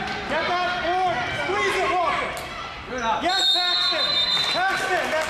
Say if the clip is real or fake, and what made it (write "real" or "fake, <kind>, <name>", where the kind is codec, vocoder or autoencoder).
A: real